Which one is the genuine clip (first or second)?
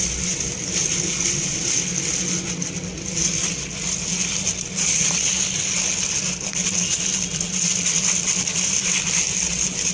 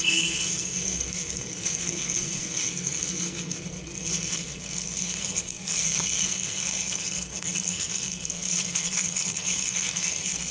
first